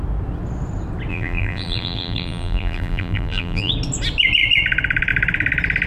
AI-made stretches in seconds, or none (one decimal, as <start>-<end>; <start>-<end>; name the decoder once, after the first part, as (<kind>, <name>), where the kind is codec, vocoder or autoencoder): 1.1-3.7 (vocoder, BigVGAN v2)